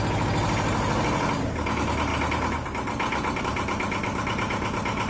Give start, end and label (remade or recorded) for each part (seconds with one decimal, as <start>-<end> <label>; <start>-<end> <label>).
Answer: 0.0-5.1 recorded